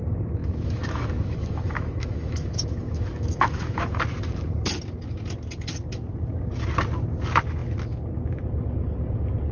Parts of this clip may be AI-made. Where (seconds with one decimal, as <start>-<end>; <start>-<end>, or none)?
0.4-4.0